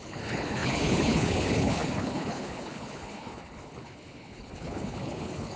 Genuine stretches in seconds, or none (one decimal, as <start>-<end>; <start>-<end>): none

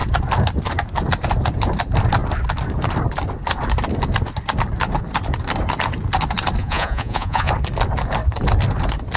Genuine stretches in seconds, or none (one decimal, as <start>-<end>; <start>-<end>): 0.0-6.6; 7.5-9.2

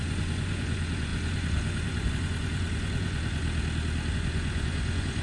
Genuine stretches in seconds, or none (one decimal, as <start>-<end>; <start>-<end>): 3.4-4.1

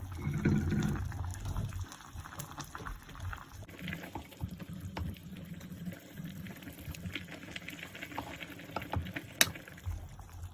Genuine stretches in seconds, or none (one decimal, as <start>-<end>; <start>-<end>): 0.0-5.2; 7.0-10.5

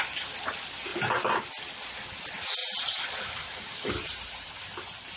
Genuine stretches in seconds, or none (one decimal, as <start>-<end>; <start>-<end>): 0.0-0.9; 1.6-2.6; 4.5-5.2

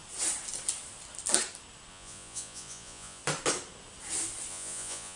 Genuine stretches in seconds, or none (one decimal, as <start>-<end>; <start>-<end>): 0.0-1.9; 3.2-4.5

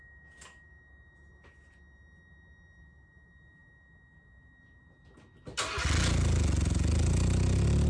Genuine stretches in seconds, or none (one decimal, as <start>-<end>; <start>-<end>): 0.0-7.9